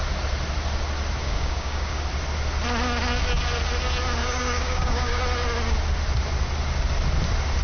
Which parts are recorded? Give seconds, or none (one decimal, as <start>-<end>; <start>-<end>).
0.0-1.2; 2.0-4.2; 5.2-7.6